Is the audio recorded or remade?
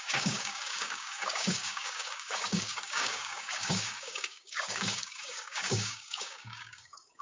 remade